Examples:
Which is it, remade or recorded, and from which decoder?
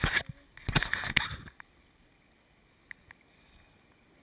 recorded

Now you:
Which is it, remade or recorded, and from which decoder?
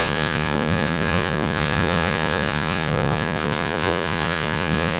remade, vocoder, Vocos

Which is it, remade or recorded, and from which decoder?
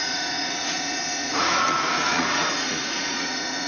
remade, vocoder, Vocos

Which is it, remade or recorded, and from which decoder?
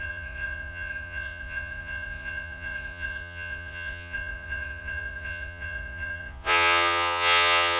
remade, vocoder, Vocos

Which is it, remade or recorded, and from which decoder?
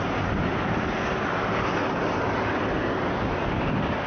recorded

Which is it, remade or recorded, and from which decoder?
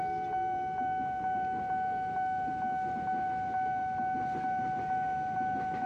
recorded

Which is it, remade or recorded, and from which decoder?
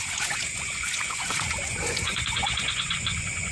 remade, vocoder, Vocos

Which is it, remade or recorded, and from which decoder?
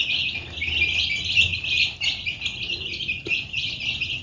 recorded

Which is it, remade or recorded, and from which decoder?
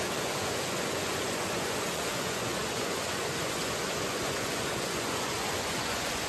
remade, vocoder, Vocos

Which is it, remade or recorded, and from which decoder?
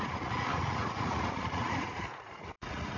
remade, vocoder, Vocos